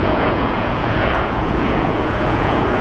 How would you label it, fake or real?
fake